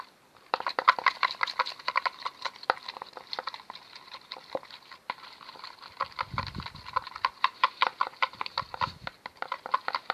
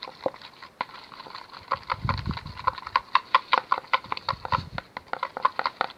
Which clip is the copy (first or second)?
first